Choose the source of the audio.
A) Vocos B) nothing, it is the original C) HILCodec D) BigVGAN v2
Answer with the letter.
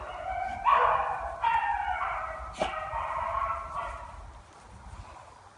B